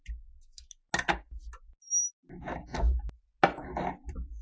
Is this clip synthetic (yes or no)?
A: no